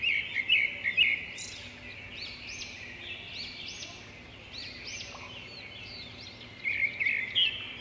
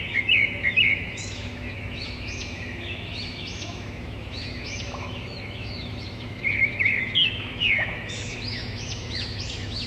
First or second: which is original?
first